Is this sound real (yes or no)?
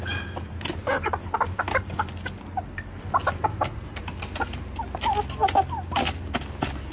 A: yes